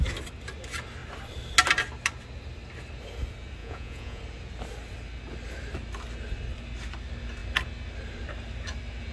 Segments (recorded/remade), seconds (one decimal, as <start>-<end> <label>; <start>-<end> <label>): 0.0-3.6 recorded; 3.6-4.2 remade; 4.2-9.1 recorded

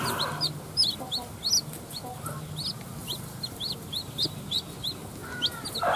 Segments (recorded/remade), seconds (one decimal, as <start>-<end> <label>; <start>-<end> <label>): 0.0-3.0 recorded; 3.0-4.2 remade; 4.2-6.0 recorded

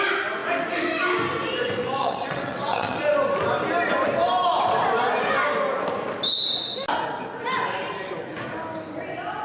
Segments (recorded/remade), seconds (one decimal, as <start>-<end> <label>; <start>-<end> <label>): 0.0-2.0 recorded; 2.0-3.0 remade; 3.0-9.4 recorded